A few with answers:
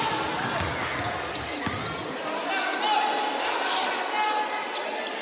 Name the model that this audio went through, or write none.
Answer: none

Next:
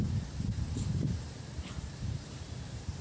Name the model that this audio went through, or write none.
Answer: vocoder, BigVGAN v2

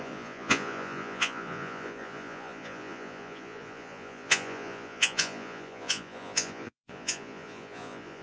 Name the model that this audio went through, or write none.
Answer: vocoder, Vocos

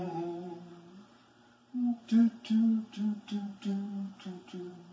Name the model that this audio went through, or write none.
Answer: vocoder, BigVGAN v2